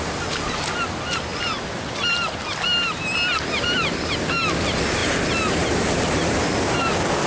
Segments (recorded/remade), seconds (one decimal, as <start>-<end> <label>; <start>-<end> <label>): 0.0-7.3 recorded